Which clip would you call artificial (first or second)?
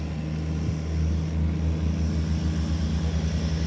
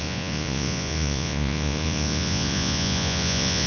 second